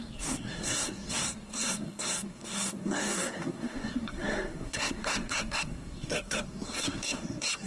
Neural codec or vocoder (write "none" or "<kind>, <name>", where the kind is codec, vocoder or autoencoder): codec, SNAC